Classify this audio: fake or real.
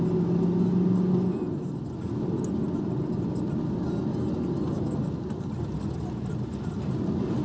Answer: real